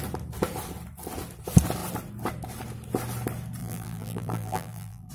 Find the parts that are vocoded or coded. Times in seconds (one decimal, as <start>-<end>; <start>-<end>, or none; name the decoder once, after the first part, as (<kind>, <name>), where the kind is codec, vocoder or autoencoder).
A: 3.6-5.1 (vocoder, BigVGAN v2)